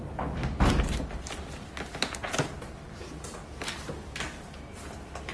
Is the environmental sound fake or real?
real